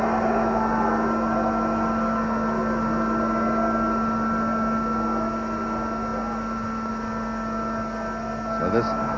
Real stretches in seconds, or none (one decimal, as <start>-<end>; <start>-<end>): 0.0-9.2